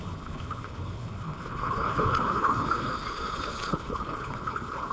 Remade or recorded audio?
remade